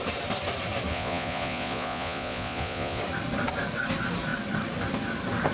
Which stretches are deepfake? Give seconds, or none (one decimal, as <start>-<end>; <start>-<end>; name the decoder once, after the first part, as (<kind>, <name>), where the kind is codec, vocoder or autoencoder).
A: 0.9-3.0 (vocoder, Vocos)